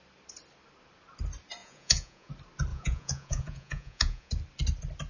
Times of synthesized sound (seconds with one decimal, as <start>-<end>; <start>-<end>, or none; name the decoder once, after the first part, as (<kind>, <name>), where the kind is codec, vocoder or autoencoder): 1.6-2.3 (vocoder, Vocos); 2.7-4.3